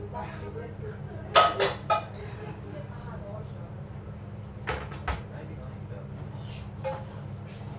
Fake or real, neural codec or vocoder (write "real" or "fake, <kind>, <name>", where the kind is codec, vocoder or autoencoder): real